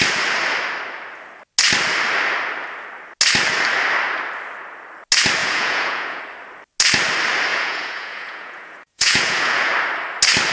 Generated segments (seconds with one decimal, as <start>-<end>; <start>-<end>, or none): 5.4-6.2; 7.5-9.7